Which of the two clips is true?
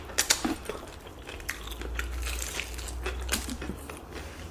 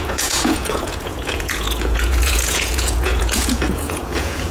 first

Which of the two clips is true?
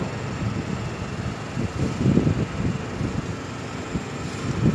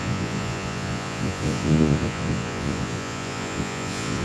first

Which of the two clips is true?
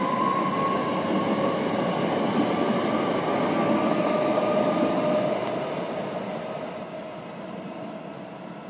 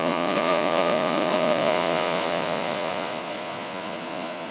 first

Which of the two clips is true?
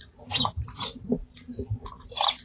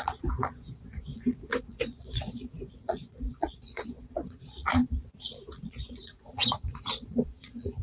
first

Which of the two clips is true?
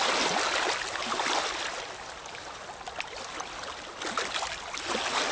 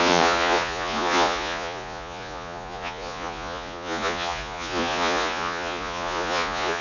first